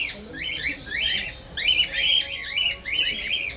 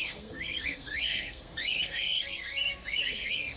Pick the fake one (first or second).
second